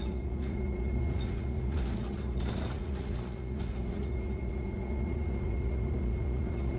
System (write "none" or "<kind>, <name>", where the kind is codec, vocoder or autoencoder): vocoder, Vocos